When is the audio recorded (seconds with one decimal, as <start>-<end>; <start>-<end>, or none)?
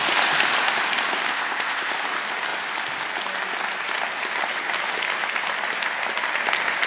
0.0-1.3; 1.9-6.9